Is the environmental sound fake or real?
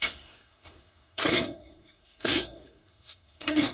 fake